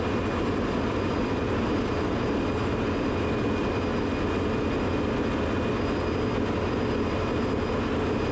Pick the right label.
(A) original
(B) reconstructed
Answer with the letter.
A